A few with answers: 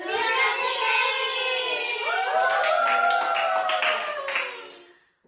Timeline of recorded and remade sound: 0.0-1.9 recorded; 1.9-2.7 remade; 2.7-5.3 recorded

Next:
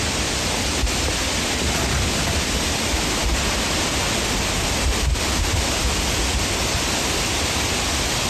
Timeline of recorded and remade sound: 0.0-8.3 recorded

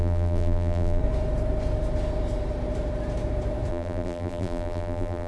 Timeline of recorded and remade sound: 0.0-1.0 remade; 1.0-3.7 recorded; 3.7-5.3 remade

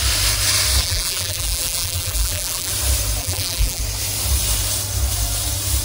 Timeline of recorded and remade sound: 0.0-0.8 recorded; 0.8-2.7 remade; 2.7-3.2 recorded; 3.2-3.8 remade; 3.8-5.8 recorded

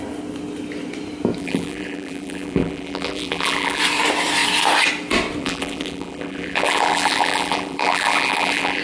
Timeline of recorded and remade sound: 0.0-1.4 recorded; 1.4-3.8 remade; 3.8-5.4 recorded; 5.4-8.8 remade